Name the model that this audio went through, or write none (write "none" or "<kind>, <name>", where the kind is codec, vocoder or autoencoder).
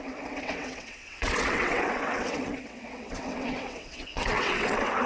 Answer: vocoder, WaveNeXt